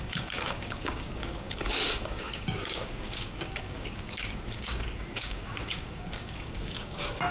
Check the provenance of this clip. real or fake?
fake